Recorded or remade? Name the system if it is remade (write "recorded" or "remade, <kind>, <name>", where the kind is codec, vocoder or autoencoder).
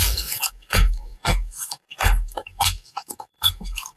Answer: remade, codec, SNAC